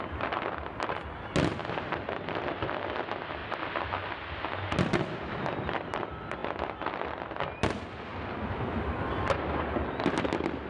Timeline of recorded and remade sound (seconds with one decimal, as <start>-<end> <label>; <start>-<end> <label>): 0.0-10.7 recorded